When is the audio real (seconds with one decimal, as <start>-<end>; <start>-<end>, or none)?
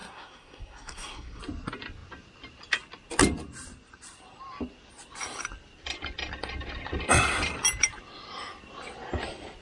1.4-9.6